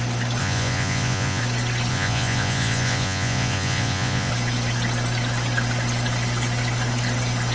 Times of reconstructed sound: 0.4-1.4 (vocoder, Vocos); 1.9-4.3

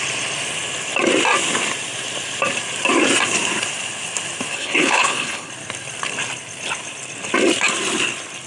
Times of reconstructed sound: 4.5-5.5 (codec, HILCodec)

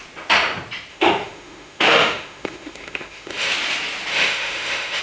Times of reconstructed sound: 0.9-3.5 (autoencoder, DAC-VAE); 4.1-5.0

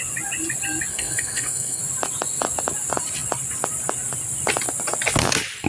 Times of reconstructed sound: 0.9-1.8 (codec, SNAC)

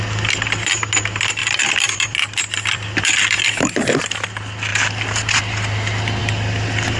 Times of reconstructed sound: 1.4-4.0 (vocoder, BigVGAN v2); 4.7-5.4

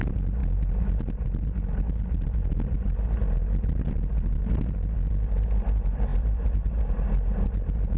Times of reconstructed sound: none

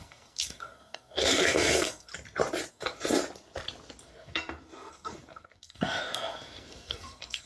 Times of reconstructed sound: 0.0-2.1 (codec, SNAC); 2.7-3.2; 4.0-7.5